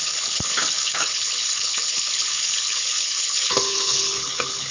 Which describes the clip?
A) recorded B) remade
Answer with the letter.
B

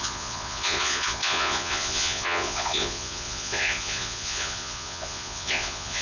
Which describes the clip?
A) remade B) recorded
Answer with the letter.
A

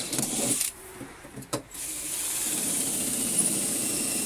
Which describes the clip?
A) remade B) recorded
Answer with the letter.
A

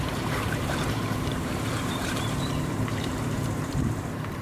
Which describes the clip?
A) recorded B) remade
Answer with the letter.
B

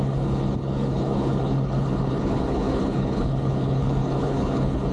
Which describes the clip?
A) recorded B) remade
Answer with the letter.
B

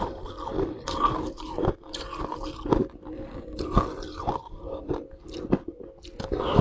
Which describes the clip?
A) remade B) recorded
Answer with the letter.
B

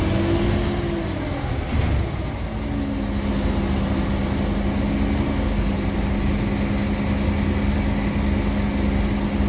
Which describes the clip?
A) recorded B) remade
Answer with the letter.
A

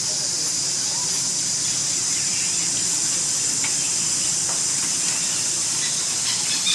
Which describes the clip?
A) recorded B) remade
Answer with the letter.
A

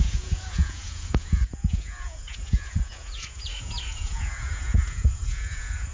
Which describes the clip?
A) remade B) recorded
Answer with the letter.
A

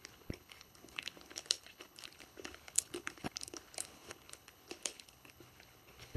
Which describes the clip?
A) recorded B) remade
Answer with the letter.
B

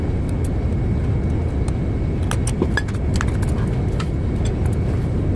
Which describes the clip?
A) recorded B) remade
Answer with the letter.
A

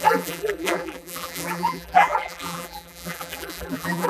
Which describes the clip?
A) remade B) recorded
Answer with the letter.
A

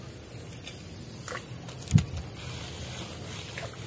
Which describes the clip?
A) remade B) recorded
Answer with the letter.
B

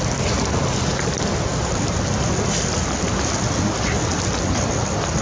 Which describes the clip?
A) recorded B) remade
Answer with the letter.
A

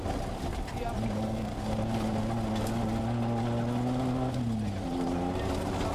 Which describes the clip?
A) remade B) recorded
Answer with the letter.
B